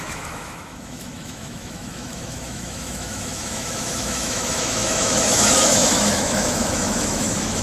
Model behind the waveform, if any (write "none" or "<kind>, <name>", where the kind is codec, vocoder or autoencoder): autoencoder, DAC-VAE